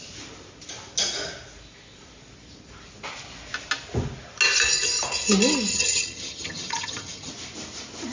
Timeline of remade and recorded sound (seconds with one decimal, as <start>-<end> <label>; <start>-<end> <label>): 0.0-5.7 recorded; 5.7-7.3 remade; 7.3-8.1 recorded